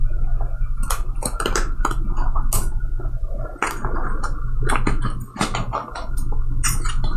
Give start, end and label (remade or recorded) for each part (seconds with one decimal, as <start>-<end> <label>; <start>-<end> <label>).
0.0-7.2 recorded